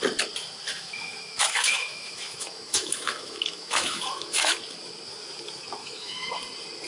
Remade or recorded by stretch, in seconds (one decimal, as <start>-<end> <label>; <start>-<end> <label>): 0.0-0.7 recorded; 0.7-4.6 remade; 4.6-5.8 recorded; 5.8-6.3 remade; 6.3-6.9 recorded